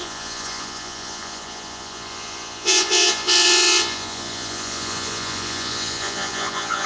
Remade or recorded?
remade